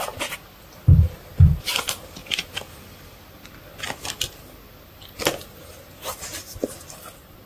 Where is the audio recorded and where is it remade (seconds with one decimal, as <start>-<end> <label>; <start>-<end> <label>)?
0.0-7.5 recorded